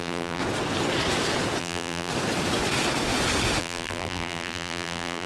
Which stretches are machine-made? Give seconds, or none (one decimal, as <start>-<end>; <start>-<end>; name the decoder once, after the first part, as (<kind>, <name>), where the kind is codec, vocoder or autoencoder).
0.0-0.4 (vocoder, BigVGAN v2); 1.6-2.1; 3.6-5.3